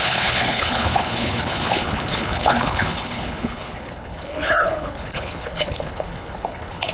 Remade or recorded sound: remade